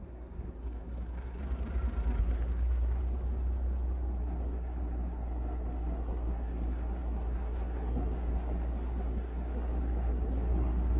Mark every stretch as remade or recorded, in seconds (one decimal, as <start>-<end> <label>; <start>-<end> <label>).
0.0-1.4 remade; 1.4-2.2 recorded; 2.2-3.0 remade; 3.0-4.2 recorded; 4.2-11.0 remade